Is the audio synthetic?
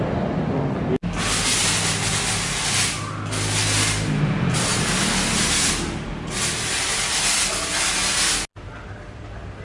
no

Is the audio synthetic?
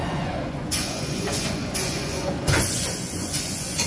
yes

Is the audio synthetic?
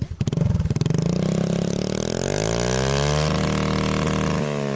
no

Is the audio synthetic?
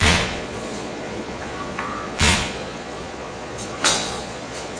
yes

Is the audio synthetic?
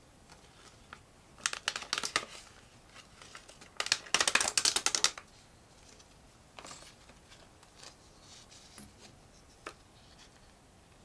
no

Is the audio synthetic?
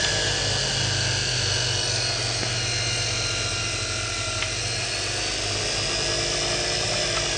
no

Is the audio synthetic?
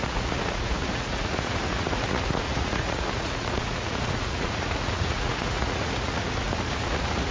yes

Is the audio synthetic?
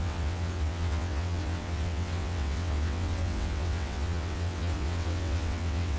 yes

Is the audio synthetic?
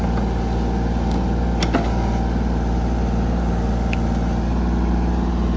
no